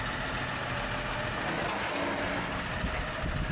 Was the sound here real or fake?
real